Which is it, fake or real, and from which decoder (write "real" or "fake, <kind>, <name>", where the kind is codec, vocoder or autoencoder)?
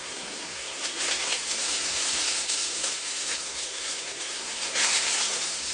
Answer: fake, codec, SNAC